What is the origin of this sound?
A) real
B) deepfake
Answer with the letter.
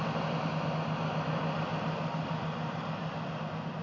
A